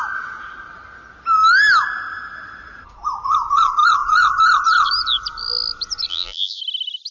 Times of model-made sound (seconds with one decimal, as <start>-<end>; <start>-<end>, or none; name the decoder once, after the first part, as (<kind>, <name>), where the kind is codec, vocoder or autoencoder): 6.1-6.6 (vocoder, BigVGAN v2)